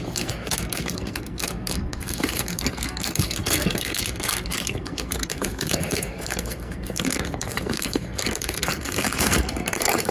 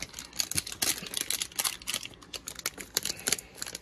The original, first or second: second